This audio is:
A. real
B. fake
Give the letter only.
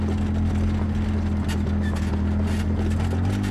A